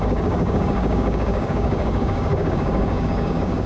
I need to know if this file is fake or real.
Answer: fake